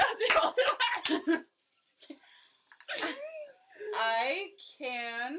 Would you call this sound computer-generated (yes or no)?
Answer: no